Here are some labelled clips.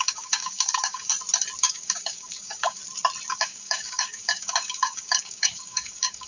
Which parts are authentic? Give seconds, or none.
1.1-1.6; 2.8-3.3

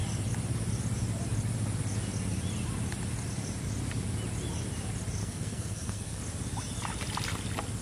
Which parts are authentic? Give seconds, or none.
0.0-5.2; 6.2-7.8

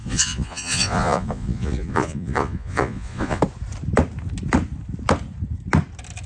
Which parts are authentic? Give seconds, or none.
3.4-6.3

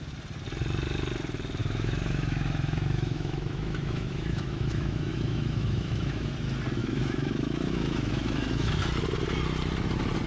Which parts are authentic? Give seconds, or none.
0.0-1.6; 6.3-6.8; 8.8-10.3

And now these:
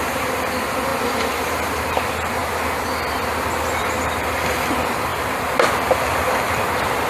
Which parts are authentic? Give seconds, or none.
2.4-3.8; 5.1-7.1

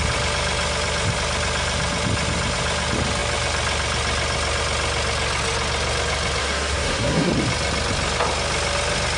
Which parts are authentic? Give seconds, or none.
0.0-6.4; 7.3-9.2

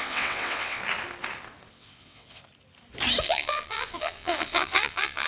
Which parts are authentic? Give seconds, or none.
0.8-1.7; 2.4-3.2

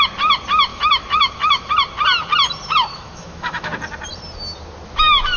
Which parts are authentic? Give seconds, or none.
0.0-0.7; 1.7-2.9; 3.7-5.4